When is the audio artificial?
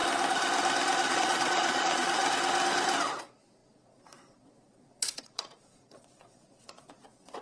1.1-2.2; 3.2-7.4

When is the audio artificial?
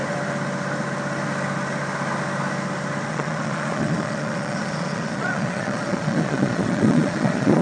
3.1-7.6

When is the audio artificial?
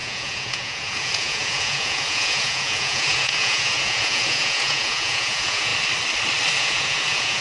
0.0-5.7; 6.6-7.4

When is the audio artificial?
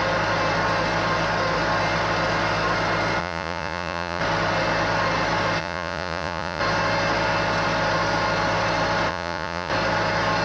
3.2-4.2; 5.6-6.6; 9.1-9.7